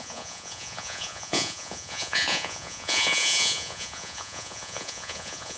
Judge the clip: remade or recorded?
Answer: remade